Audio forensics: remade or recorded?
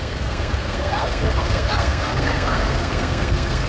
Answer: remade